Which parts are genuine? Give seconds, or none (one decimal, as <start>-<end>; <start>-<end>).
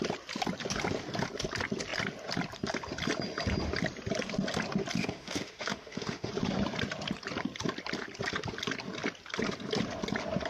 0.0-5.0; 6.3-10.5